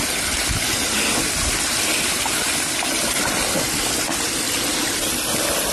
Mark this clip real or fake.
real